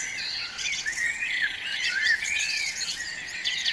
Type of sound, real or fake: fake